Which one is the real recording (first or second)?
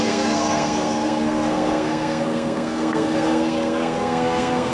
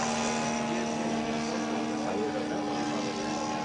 second